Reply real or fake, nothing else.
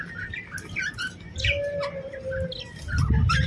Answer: real